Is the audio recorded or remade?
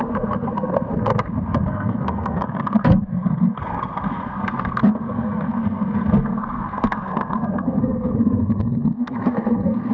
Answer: remade